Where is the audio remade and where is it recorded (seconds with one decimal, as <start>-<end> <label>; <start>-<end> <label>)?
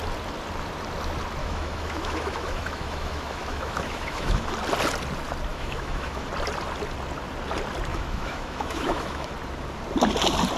0.0-1.4 recorded; 1.4-4.5 remade; 4.5-5.5 recorded; 5.5-6.3 remade; 6.3-7.9 recorded; 7.9-9.3 remade; 9.3-10.6 recorded